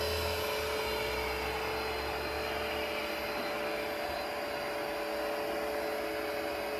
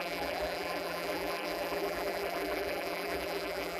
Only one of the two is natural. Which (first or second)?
first